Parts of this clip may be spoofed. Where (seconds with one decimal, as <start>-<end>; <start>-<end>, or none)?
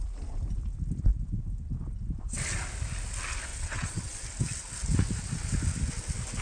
3.5-4.2